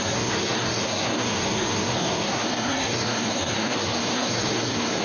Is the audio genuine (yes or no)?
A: no